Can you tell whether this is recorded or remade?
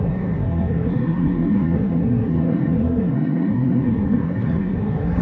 remade